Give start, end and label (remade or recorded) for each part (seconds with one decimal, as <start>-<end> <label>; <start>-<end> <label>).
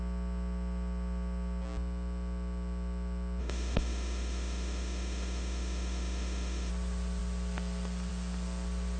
0.0-3.4 recorded; 3.4-6.7 remade; 6.7-9.0 recorded